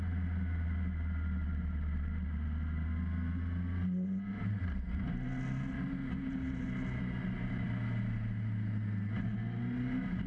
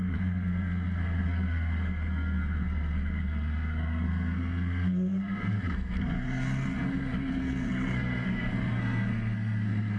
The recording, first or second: first